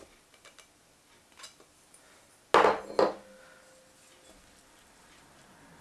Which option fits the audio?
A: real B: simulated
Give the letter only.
A